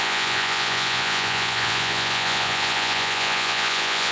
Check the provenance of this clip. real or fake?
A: fake